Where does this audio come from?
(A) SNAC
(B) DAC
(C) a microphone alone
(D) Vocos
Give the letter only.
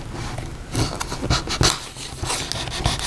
C